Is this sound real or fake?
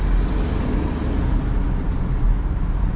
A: real